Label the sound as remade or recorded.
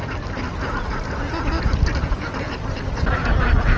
recorded